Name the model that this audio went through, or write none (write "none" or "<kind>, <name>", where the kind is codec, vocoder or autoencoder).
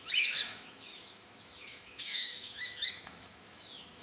autoencoder, DAC-VAE